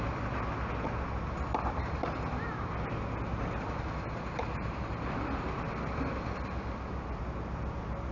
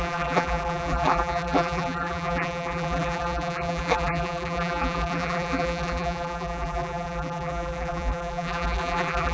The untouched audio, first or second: first